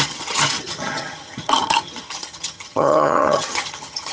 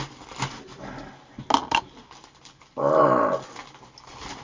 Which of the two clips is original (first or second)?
second